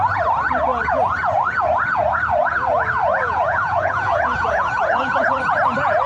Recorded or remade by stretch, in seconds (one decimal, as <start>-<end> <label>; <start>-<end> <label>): 0.0-3.2 recorded; 3.2-5.4 remade; 5.4-6.1 recorded